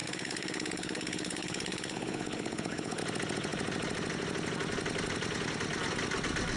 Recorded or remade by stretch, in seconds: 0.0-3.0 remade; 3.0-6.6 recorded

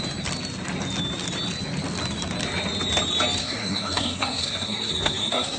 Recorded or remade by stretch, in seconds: 0.0-3.4 recorded; 3.4-5.6 remade

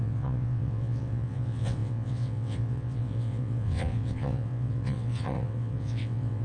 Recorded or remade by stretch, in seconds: 0.0-6.4 remade

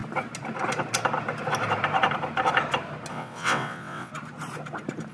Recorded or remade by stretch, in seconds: 0.0-3.1 recorded; 3.1-4.1 remade; 4.1-5.1 recorded

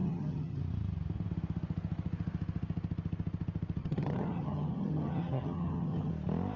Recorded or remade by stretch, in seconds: 0.0-0.6 remade; 0.6-3.8 recorded; 3.8-6.1 remade; 6.1-6.6 recorded

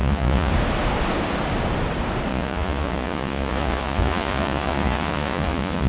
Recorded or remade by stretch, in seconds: 0.0-0.5 remade; 0.5-2.3 recorded; 2.3-5.9 remade

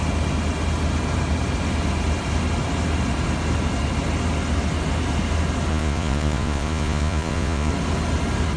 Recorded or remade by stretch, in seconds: 0.0-5.7 recorded; 5.7-7.7 remade; 7.7-8.6 recorded